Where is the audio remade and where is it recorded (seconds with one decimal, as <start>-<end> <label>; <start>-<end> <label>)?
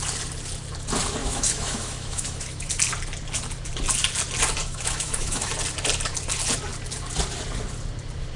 0.0-1.2 recorded; 1.2-2.7 remade; 2.7-4.6 recorded; 4.6-5.5 remade; 5.5-8.4 recorded